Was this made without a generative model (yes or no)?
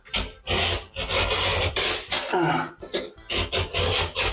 yes